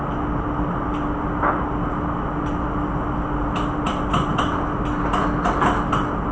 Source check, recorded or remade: recorded